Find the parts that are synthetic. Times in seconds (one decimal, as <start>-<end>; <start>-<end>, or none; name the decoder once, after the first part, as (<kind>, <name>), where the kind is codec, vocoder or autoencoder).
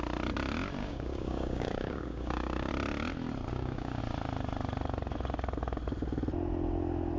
0.8-2.7 (codec, DAC); 3.5-4.0